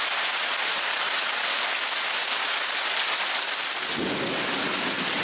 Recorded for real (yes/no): yes